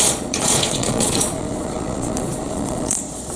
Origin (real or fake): fake